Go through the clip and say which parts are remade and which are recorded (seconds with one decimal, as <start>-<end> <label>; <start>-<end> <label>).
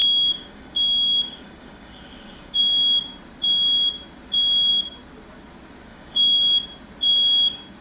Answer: 0.0-2.6 remade; 2.6-5.9 recorded; 5.9-6.4 remade; 6.4-7.8 recorded